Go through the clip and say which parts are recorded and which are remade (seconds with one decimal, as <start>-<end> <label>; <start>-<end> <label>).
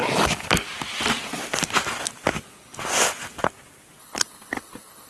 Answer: 0.0-4.0 recorded; 4.0-5.1 remade